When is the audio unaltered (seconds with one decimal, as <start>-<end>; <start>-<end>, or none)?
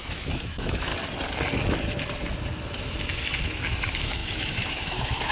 0.9-3.4